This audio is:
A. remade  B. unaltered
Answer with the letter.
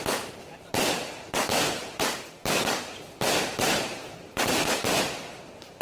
A